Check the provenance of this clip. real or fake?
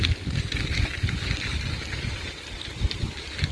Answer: real